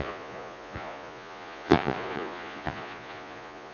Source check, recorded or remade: remade